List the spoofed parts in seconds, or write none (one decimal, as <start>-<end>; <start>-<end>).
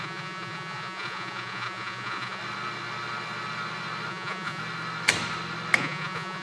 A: 0.0-2.4; 4.1-4.6; 5.8-6.4